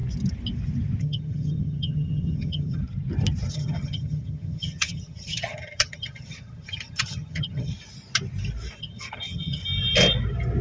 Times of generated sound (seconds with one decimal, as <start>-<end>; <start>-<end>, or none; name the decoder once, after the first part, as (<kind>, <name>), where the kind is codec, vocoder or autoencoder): 1.0-2.8 (vocoder, HiFi-GAN); 3.5-7.7; 8.8-9.6

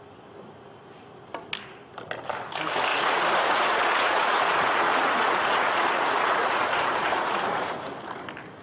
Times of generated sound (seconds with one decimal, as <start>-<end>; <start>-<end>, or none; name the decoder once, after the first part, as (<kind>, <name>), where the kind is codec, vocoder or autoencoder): 2.9-7.9 (vocoder, Vocos)

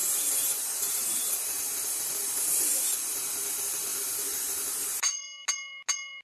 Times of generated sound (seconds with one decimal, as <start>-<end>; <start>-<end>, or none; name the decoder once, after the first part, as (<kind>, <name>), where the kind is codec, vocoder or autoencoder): 0.0-2.8 (vocoder, BigVGAN v2)

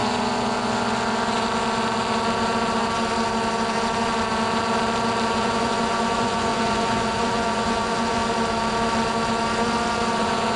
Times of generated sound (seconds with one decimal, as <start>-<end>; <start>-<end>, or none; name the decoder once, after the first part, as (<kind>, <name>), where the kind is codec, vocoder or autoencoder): 5.3-8.2 (vocoder, Vocos); 10.2-10.6

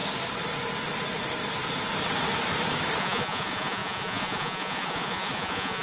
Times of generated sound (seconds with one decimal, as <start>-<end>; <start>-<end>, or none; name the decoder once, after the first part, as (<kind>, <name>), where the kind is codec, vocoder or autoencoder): 3.0-5.8 (vocoder, Vocos)